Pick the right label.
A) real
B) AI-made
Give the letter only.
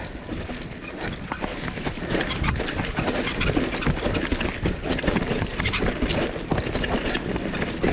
A